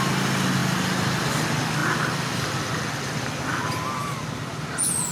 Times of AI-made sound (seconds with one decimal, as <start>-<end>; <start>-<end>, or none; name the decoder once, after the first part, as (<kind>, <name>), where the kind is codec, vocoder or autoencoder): none